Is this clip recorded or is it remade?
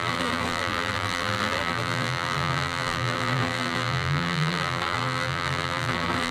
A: remade